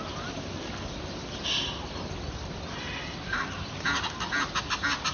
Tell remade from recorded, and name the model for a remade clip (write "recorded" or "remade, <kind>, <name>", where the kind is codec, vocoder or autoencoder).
recorded